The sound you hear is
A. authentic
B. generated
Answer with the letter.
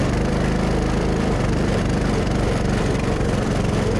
B